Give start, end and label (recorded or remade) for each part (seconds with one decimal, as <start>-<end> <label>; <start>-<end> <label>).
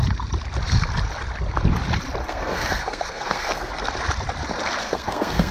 0.0-2.2 recorded; 2.2-3.7 remade; 3.7-4.8 recorded; 4.8-5.5 remade